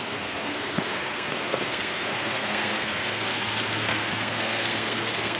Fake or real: fake